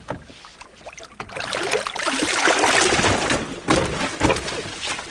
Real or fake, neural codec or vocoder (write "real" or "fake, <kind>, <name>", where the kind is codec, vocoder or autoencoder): real